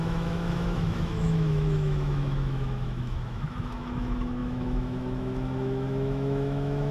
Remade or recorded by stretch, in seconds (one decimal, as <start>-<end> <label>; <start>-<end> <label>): 0.0-6.9 remade